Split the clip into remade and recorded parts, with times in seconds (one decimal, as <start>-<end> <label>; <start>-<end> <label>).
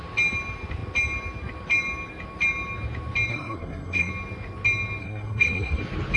0.0-3.3 recorded; 3.3-4.1 remade; 4.1-5.0 recorded; 5.0-5.8 remade; 5.8-6.2 recorded